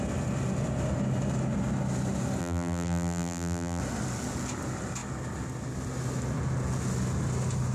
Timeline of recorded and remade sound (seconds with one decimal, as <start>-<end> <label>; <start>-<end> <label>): 0.0-2.4 recorded; 2.4-3.8 remade; 3.8-7.7 recorded

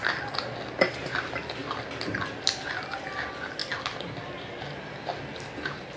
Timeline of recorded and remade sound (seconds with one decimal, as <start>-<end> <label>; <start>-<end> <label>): 0.0-1.6 recorded; 1.6-2.2 remade; 2.2-6.0 recorded

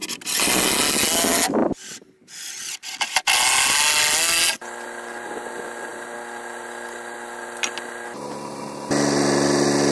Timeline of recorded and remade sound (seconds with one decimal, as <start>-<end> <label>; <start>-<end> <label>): 0.0-9.9 recorded

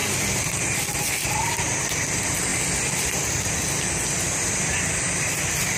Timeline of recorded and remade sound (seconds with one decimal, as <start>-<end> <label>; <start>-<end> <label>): 0.0-2.5 recorded; 2.5-3.5 remade; 3.5-5.8 recorded

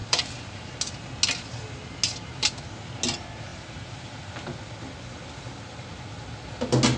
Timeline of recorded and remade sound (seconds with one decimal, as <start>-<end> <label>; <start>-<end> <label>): 0.0-0.7 remade; 0.7-3.5 recorded; 3.5-4.3 remade; 4.3-7.0 recorded

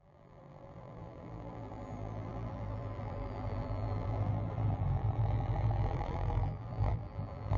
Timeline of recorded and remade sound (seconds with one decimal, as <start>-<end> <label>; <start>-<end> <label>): 0.0-7.6 remade